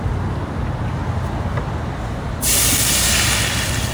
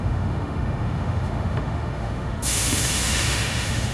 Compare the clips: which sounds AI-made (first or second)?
second